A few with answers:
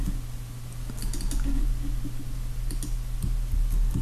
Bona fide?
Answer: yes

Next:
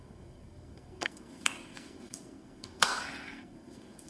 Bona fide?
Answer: no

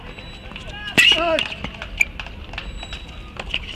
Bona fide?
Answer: yes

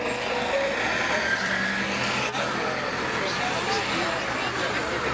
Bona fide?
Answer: yes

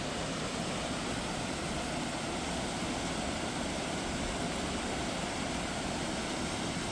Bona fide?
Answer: yes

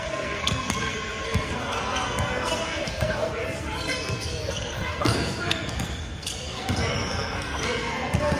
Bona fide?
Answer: no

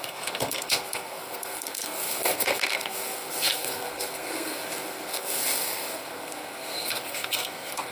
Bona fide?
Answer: no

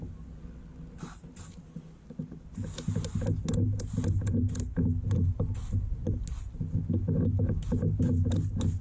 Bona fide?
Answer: yes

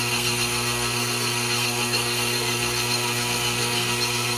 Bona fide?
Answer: no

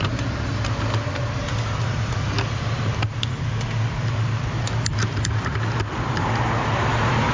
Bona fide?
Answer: yes